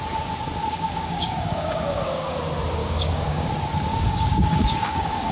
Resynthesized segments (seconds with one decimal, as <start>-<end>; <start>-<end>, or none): 0.6-2.4; 2.8-3.5; 3.9-5.3